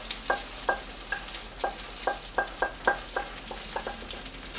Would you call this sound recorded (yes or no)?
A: yes